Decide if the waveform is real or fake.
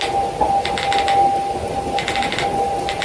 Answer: fake